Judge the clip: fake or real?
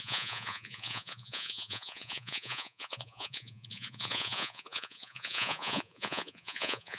fake